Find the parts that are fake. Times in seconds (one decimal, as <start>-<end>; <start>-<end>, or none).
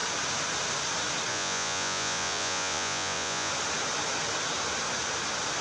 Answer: 1.3-3.5